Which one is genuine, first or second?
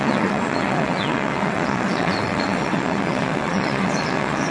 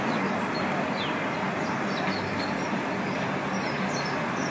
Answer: second